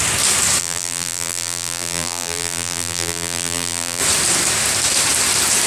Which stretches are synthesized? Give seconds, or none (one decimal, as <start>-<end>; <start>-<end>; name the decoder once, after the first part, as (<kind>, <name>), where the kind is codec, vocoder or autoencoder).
0.6-4.0 (vocoder, BigVGAN v2)